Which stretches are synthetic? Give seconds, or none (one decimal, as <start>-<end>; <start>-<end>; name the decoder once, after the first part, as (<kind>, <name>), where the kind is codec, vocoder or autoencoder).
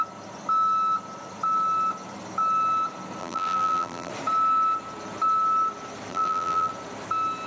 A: 3.2-4.1 (vocoder, BigVGAN v2); 6.1-6.7